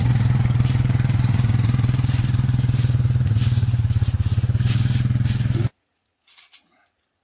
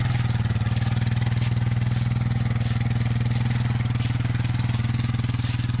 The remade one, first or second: first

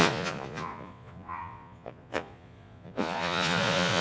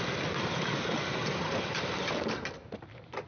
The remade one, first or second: first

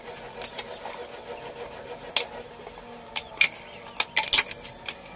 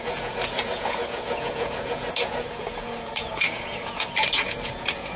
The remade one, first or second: second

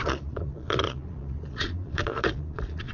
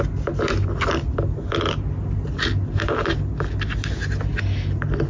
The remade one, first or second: first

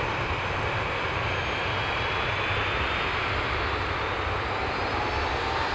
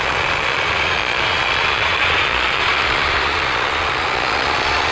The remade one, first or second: second